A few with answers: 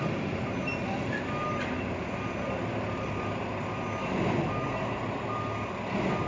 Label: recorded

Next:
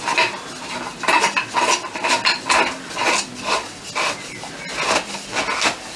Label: recorded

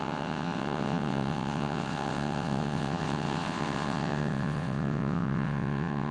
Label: remade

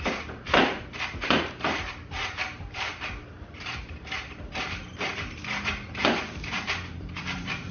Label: remade